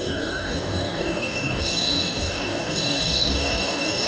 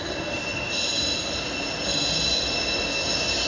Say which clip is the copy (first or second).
first